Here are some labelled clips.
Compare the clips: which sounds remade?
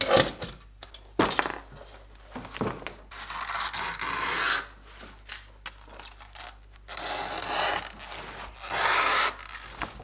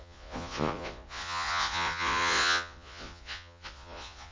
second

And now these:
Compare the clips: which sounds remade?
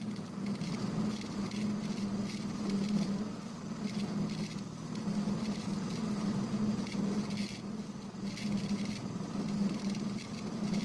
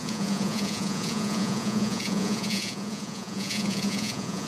second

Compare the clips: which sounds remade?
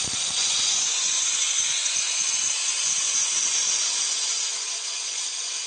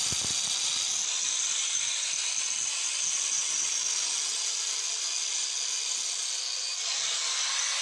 first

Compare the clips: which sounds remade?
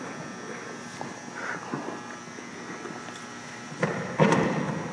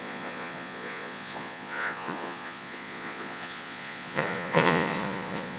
second